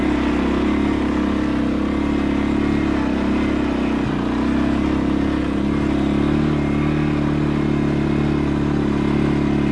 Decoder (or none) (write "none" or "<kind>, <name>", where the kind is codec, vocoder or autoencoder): none